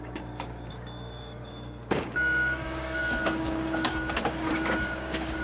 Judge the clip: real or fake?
fake